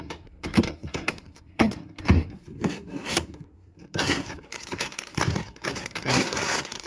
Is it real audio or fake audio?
fake